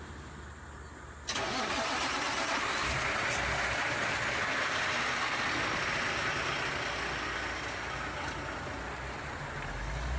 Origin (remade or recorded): recorded